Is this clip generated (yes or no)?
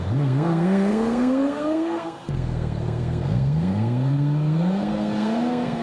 yes